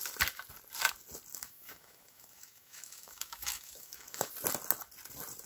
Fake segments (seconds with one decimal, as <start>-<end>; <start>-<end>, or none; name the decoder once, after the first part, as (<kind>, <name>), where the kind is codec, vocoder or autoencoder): 1.3-4.3 (autoencoder, DAC-VAE)